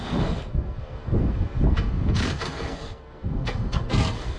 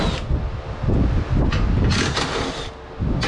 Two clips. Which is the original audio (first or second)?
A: second